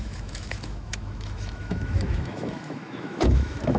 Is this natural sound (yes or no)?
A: no